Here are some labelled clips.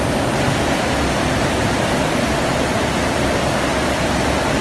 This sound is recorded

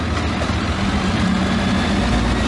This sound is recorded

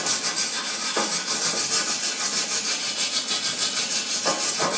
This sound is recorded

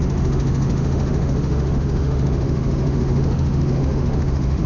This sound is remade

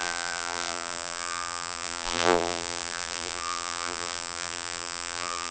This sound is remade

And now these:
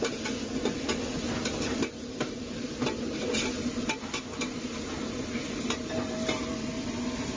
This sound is recorded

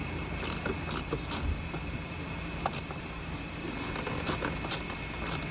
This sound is recorded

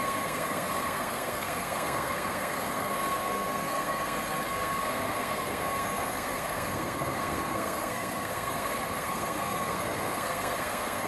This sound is remade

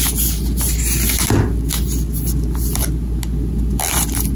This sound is recorded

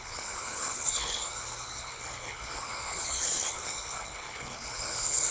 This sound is remade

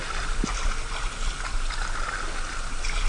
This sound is recorded